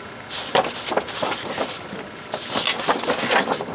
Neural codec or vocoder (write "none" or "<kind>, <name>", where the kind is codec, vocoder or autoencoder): none